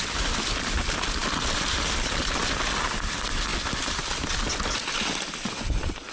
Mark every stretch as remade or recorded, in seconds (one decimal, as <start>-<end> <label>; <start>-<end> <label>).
0.0-6.1 recorded